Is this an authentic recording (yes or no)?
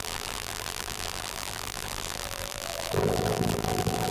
no